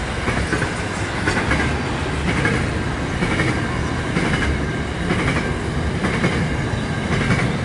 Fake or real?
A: real